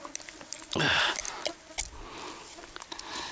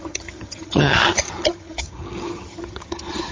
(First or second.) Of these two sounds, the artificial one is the second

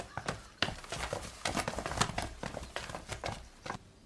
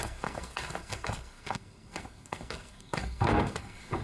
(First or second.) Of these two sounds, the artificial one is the second